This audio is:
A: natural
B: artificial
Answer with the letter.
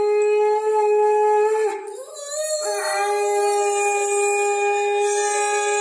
A